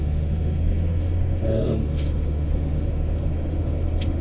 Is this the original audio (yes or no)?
no